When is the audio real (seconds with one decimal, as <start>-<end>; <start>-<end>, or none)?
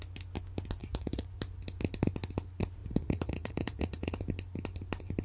0.0-0.8; 1.4-2.8; 4.2-5.2